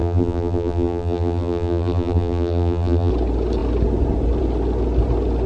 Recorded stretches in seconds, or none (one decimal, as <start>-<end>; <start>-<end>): 3.1-5.5